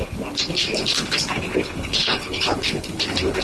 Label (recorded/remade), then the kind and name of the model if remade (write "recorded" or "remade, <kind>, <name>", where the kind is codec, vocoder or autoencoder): remade, codec, HILCodec